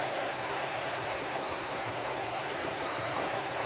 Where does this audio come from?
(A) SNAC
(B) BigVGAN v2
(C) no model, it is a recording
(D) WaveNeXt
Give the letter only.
A